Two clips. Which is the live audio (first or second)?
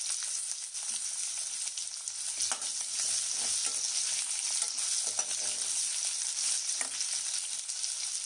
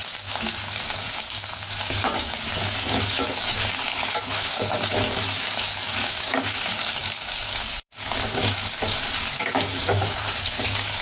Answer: first